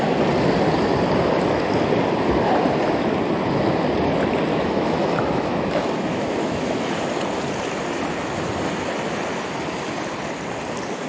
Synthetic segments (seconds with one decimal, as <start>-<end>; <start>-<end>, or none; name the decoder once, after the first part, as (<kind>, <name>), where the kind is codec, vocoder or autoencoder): 4.5-6.9 (autoencoder, DAC-VAE)